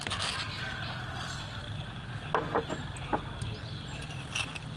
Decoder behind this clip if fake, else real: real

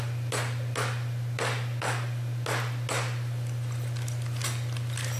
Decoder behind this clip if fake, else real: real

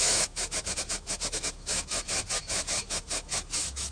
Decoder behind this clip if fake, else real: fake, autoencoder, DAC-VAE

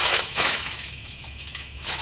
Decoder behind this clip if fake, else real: fake, autoencoder, DAC-VAE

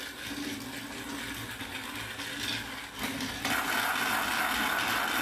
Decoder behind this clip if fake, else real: real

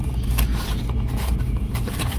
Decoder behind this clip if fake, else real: real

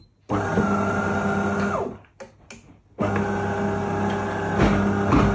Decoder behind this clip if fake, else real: real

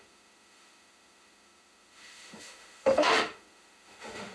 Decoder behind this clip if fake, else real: fake, autoencoder, DAC-VAE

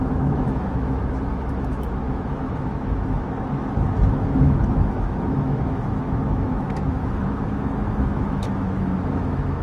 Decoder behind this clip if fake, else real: fake, autoencoder, DAC-VAE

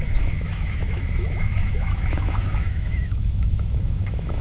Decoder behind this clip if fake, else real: fake, autoencoder, DAC-VAE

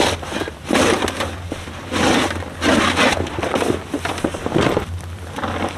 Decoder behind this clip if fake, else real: real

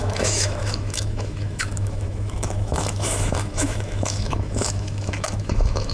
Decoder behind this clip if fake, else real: fake, autoencoder, DAC-VAE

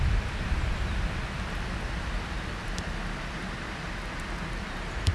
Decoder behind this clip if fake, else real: real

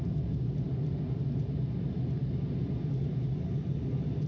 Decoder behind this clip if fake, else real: real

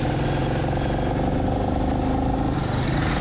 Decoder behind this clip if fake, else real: real